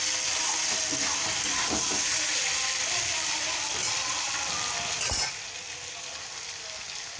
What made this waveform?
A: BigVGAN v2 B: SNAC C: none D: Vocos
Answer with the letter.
C